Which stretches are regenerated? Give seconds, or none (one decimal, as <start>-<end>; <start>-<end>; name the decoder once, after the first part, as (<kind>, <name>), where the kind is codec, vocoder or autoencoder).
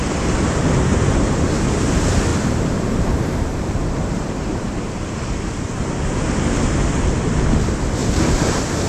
0.9-1.6 (vocoder, BigVGAN v2); 2.3-5.8